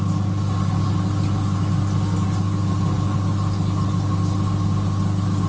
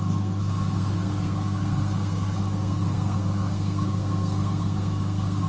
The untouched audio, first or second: first